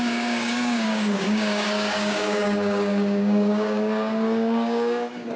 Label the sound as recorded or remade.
remade